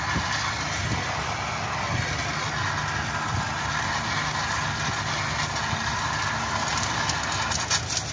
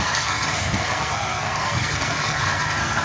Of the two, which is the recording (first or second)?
first